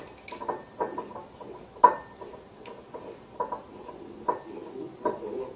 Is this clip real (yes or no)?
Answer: yes